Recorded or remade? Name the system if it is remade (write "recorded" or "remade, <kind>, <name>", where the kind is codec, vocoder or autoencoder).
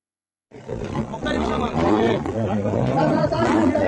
remade, vocoder, Vocos